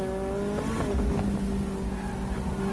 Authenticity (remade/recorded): recorded